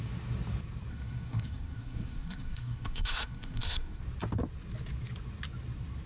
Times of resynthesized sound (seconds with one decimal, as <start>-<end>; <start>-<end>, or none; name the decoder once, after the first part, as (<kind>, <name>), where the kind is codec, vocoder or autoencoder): 0.9-4.0 (codec, SNAC)